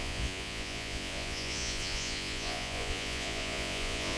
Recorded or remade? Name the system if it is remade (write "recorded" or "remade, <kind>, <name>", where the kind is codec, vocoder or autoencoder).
remade, vocoder, Vocos